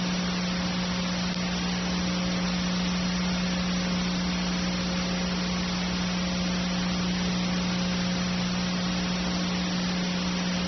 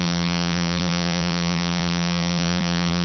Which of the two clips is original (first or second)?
first